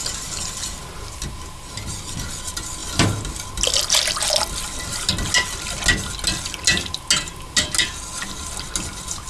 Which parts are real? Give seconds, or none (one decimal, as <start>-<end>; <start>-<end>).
0.0-9.3